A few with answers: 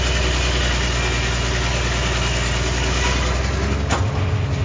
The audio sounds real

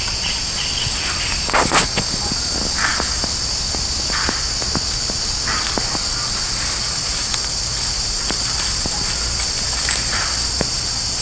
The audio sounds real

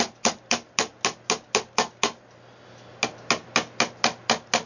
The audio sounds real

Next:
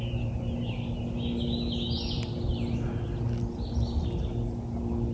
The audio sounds real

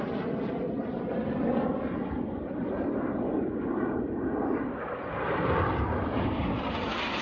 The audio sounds real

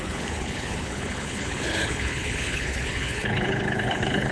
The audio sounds fake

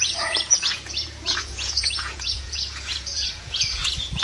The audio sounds fake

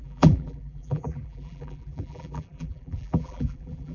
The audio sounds fake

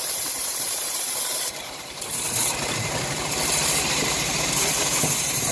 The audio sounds fake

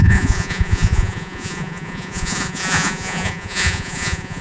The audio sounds fake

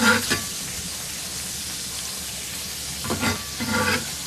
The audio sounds real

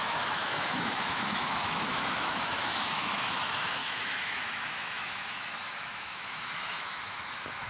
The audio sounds fake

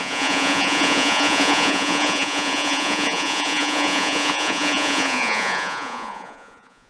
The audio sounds fake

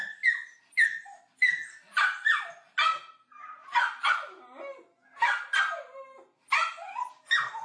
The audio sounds real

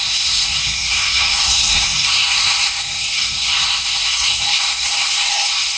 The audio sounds fake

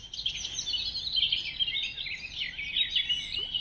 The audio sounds real